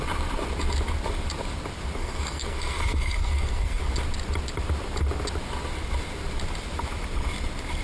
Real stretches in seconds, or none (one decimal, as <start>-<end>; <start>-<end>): 0.0-2.0; 3.8-7.8